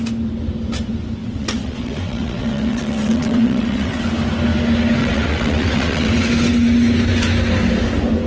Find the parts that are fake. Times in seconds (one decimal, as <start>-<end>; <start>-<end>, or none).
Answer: 1.2-4.0; 5.0-6.3